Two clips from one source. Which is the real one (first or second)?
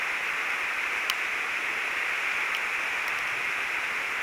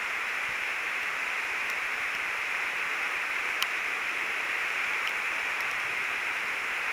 first